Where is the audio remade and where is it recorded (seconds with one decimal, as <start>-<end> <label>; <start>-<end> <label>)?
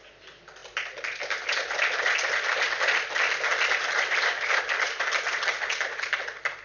0.0-6.6 recorded